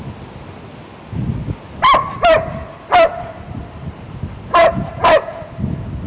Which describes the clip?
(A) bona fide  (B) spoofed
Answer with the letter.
A